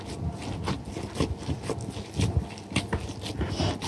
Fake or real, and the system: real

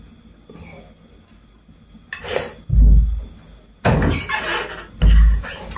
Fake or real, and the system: real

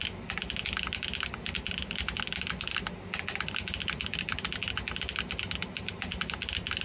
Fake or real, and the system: real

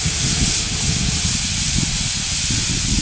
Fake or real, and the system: real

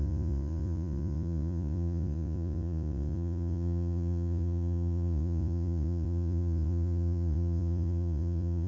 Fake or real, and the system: fake, vocoder, Vocos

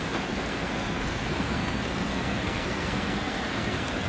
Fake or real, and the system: fake, codec, SNAC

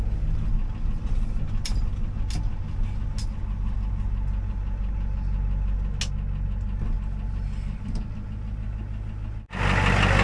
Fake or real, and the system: real